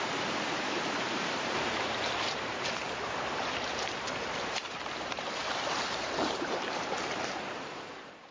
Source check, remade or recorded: remade